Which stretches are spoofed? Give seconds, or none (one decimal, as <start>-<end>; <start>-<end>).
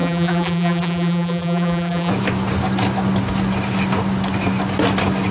0.0-2.1